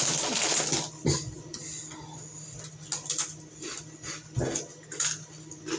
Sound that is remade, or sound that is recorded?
recorded